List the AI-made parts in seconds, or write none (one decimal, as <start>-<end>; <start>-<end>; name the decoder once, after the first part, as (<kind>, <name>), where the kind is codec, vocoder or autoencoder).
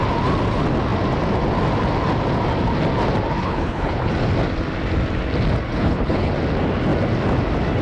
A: 3.4-4.1 (codec, HILCodec); 5.7-6.3